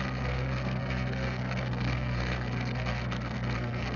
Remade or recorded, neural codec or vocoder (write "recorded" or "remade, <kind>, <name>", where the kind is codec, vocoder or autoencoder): remade, codec, SNAC